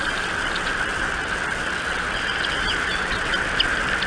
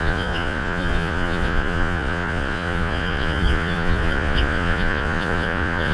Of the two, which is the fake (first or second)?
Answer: second